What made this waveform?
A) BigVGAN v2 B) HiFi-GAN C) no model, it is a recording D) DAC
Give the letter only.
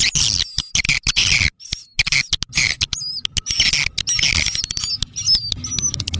C